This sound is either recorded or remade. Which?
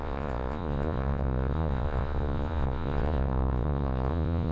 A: remade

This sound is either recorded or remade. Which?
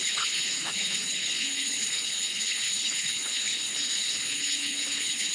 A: remade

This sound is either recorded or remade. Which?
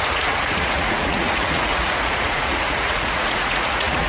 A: remade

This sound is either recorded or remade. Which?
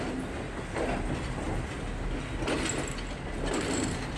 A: recorded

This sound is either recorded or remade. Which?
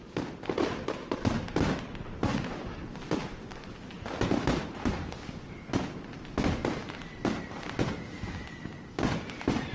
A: recorded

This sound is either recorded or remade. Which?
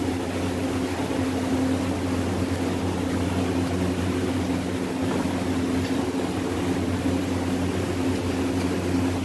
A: recorded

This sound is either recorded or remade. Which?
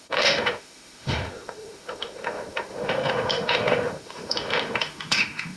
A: remade